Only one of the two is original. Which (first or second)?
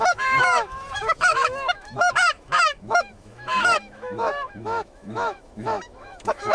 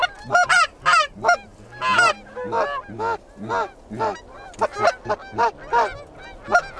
second